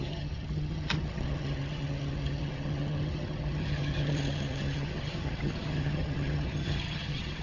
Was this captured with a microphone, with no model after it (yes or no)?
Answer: no